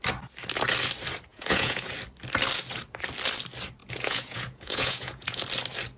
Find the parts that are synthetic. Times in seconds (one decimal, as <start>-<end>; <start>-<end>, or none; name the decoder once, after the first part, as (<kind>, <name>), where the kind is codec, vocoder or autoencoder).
1.3-1.9 (vocoder, Vocos); 3.8-5.4